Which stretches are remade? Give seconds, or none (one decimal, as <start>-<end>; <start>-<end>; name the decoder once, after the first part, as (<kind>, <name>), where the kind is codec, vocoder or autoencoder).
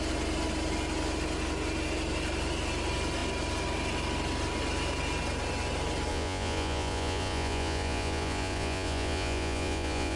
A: 6.1-10.2 (vocoder, Vocos)